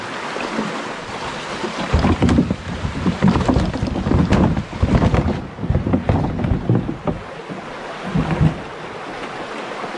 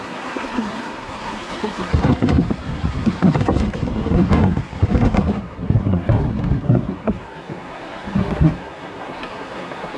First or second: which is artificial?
second